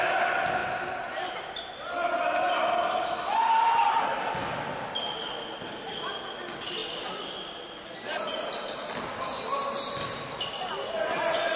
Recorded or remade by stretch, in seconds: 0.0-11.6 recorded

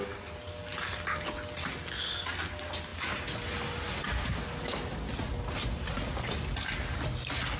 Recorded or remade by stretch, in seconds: 0.0-7.6 recorded

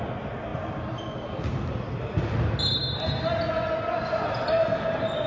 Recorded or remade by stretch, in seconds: 0.0-5.3 recorded

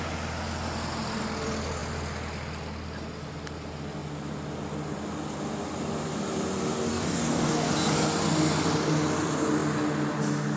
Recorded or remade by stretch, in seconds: 0.0-6.9 recorded; 6.9-7.7 remade; 7.7-10.6 recorded

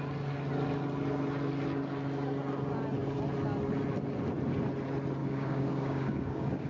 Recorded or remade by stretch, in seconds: 0.0-5.2 recorded; 5.2-6.7 remade

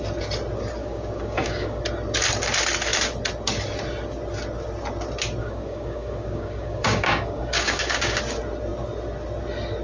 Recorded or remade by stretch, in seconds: 0.0-0.8 recorded; 0.8-1.8 remade; 1.8-5.4 recorded; 5.4-8.2 remade; 8.2-9.8 recorded